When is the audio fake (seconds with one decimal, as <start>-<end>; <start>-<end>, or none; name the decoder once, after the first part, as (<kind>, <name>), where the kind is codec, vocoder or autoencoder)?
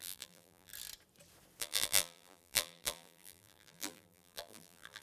0.0-0.7 (vocoder, BigVGAN v2); 1.6-5.0